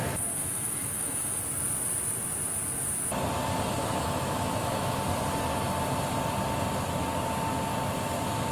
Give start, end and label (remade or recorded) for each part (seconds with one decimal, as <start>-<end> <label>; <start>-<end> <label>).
0.0-1.4 remade; 1.4-3.8 recorded; 3.8-5.0 remade; 5.0-8.5 recorded